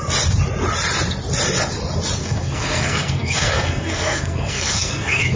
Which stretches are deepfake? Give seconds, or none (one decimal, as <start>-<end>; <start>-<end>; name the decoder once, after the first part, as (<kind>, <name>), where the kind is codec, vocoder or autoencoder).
2.2-5.4 (codec, SNAC)